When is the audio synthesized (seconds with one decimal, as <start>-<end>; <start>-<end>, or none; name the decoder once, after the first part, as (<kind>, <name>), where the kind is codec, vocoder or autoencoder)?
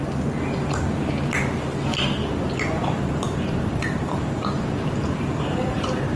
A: 2.2-6.2 (vocoder, BigVGAN v2)